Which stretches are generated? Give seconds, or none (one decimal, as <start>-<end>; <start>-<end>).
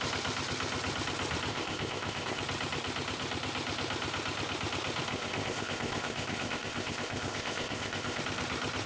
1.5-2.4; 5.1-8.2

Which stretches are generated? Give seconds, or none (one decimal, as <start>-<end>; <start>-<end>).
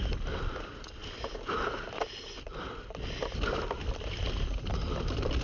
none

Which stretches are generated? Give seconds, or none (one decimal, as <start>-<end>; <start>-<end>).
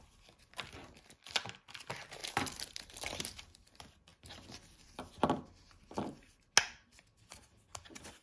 2.2-3.2; 4.1-5.1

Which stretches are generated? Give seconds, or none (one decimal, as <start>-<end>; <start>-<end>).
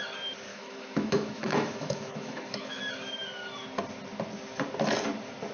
0.5-2.8